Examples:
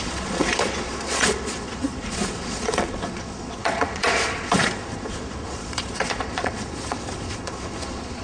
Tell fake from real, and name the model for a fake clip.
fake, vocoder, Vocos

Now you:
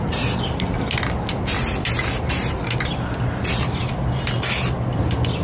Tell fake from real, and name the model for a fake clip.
real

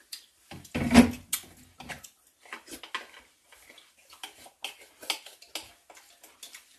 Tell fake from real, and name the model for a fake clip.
real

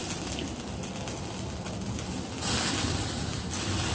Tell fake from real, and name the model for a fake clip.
real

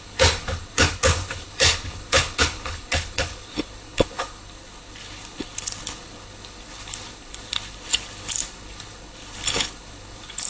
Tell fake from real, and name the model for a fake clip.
fake, codec, HILCodec